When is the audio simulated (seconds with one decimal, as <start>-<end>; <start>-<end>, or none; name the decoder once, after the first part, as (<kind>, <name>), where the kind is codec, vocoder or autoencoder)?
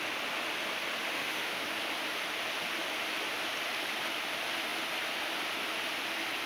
1.1-1.6 (autoencoder, DAC-VAE)